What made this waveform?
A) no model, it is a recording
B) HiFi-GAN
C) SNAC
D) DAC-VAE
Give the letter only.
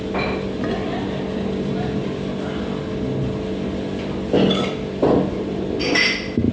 A